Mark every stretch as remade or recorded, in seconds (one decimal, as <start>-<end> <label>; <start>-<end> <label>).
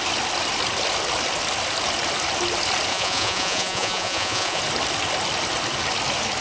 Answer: 0.0-2.9 recorded; 2.9-4.6 remade; 4.6-6.4 recorded